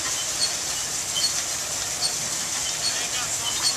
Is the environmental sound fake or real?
real